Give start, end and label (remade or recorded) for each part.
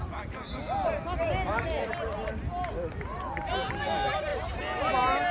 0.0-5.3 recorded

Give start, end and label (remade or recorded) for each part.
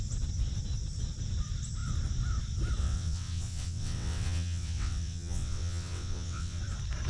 0.0-2.8 recorded; 2.8-6.6 remade; 6.6-7.1 recorded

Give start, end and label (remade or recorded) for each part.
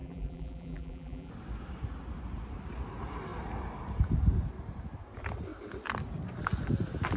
0.0-1.3 remade; 1.3-7.2 recorded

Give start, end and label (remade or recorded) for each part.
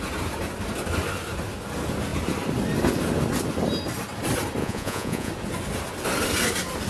0.0-4.6 recorded; 4.6-5.3 remade; 5.3-6.9 recorded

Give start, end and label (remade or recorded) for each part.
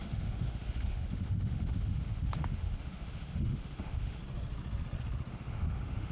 0.0-4.2 remade; 4.2-5.3 recorded; 5.3-6.1 remade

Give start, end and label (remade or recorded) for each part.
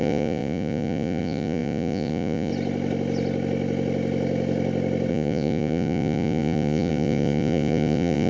0.0-2.5 remade; 2.5-5.1 recorded; 5.1-8.3 remade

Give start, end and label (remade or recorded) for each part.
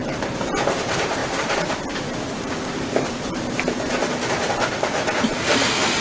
0.0-4.0 remade; 4.0-6.0 recorded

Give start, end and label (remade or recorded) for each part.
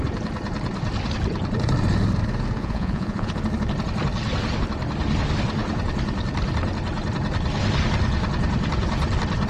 0.0-2.6 recorded; 2.6-3.3 remade; 3.3-9.5 recorded